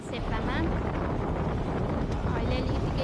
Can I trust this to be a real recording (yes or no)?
yes